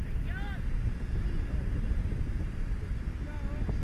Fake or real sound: real